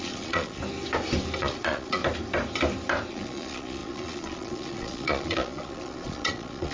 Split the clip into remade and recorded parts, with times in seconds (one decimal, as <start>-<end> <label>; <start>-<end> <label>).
0.0-0.6 remade; 0.6-1.4 recorded; 1.4-2.0 remade; 2.0-3.1 recorded; 3.1-6.7 remade